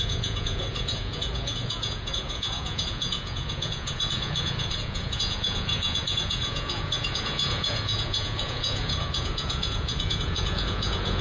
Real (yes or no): no